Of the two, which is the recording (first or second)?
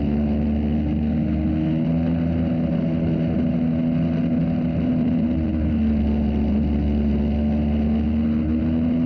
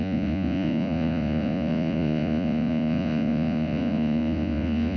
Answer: first